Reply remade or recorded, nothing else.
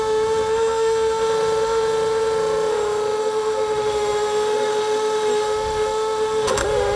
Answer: remade